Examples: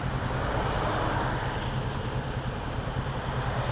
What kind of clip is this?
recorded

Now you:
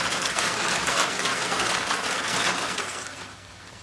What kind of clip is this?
remade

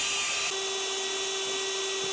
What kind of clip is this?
recorded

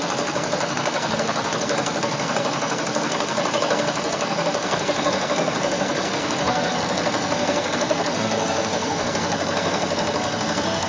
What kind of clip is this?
remade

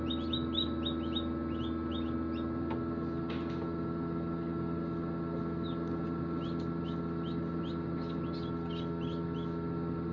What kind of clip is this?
recorded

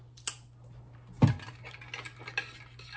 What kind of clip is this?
recorded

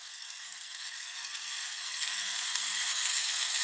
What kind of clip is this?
remade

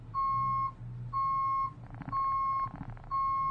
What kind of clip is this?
recorded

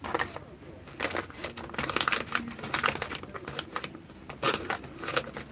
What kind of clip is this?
recorded